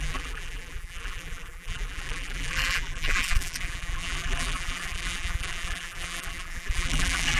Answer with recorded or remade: remade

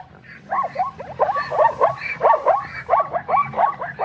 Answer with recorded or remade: remade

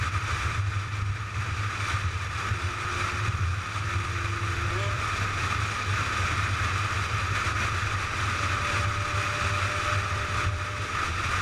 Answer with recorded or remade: recorded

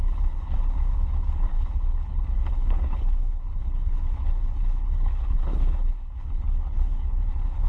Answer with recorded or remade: remade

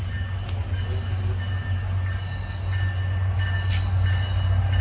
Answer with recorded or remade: recorded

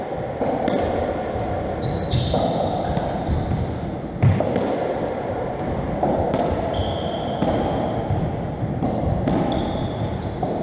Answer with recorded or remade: recorded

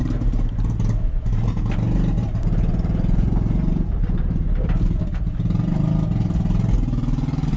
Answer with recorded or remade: recorded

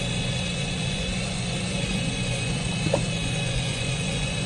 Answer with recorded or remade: remade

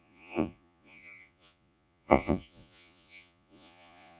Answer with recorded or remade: remade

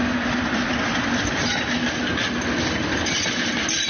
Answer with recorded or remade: recorded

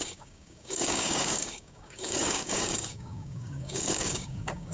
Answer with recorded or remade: remade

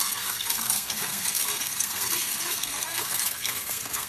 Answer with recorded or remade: remade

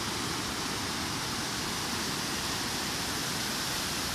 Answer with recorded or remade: recorded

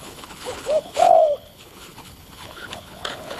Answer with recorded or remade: remade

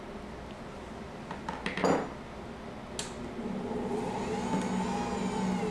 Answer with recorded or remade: recorded